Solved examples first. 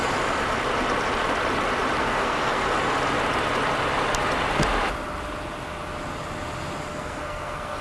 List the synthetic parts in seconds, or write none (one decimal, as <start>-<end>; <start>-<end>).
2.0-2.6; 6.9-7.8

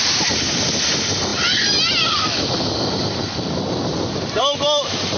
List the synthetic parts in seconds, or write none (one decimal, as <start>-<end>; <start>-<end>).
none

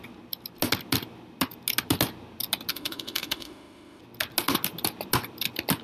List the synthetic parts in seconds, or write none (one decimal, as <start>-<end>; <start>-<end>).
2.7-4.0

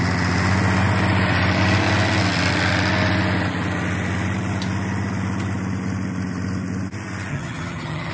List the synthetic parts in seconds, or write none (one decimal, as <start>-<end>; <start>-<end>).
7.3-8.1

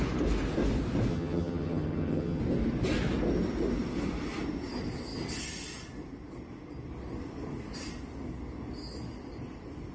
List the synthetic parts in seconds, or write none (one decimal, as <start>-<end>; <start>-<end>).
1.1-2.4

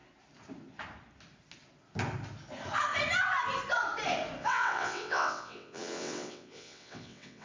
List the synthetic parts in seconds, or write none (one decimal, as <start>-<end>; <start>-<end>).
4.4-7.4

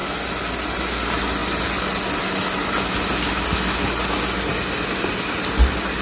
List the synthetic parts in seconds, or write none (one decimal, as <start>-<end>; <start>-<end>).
none